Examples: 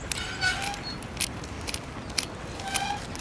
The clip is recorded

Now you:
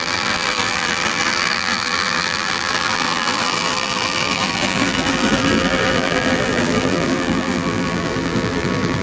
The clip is remade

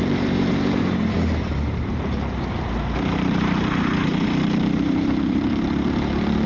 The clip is remade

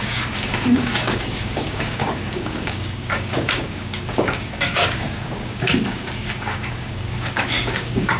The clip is remade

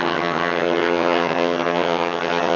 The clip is remade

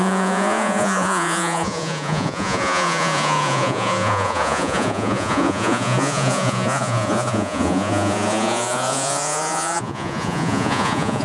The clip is remade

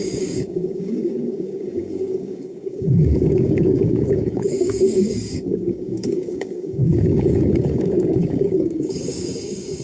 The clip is remade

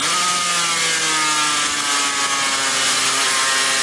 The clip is recorded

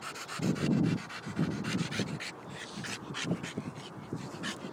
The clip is recorded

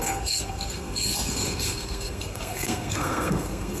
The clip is remade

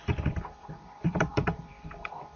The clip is remade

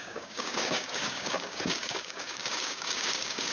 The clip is remade